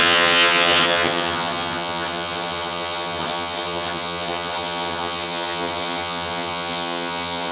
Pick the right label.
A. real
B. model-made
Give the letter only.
B